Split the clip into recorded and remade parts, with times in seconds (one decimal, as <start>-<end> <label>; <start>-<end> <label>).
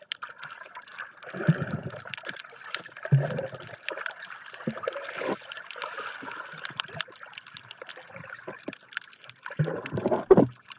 0.0-10.8 recorded